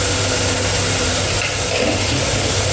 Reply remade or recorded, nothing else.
recorded